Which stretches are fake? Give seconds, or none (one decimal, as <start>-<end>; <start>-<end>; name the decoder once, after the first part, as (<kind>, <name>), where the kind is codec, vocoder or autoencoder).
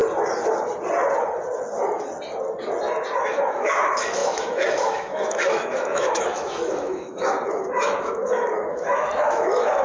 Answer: 3.2-9.8 (autoencoder, DAC-VAE)